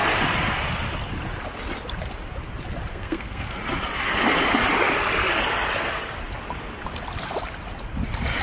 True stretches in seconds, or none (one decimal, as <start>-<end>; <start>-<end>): 0.0-2.9; 3.6-8.4